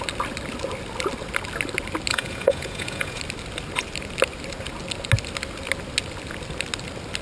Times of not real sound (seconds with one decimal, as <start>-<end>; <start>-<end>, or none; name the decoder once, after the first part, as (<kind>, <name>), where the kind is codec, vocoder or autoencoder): 2.1-3.2 (vocoder, Vocos)